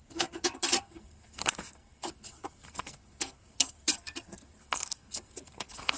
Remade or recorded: remade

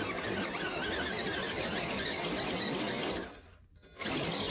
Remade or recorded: recorded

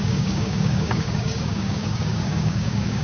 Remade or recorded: remade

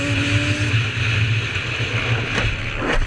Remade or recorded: recorded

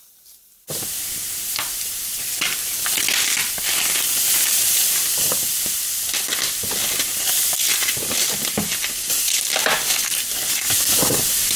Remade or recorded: recorded